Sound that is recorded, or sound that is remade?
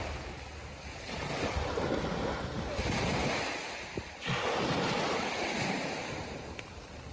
recorded